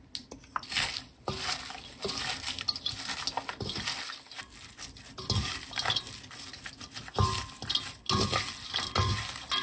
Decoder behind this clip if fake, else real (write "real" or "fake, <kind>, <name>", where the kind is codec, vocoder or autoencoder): real